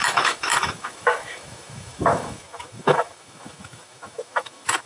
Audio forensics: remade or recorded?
remade